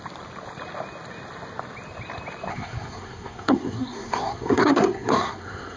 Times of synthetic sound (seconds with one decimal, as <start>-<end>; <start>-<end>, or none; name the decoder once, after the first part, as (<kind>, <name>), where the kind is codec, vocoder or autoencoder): 2.5-5.8 (codec, SNAC)

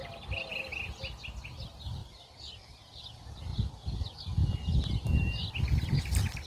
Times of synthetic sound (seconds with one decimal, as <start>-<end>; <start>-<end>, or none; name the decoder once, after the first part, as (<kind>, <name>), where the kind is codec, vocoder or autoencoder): none